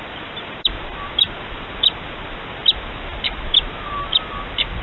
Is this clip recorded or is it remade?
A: recorded